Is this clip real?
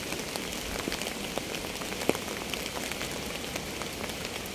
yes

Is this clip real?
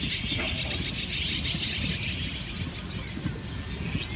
yes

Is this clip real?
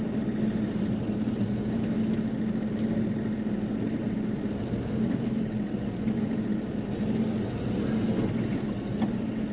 yes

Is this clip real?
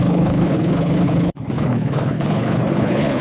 no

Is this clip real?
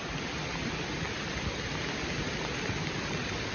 yes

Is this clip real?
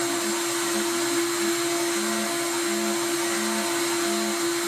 yes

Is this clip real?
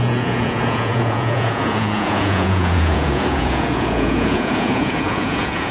no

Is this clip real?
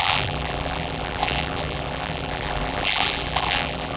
no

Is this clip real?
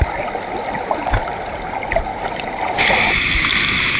yes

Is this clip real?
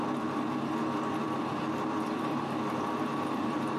no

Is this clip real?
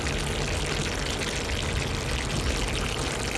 yes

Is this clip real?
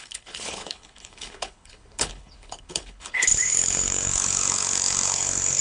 no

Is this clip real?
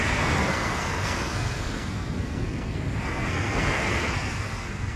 no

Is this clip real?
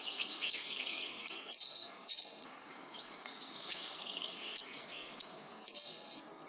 no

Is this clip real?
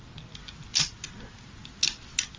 yes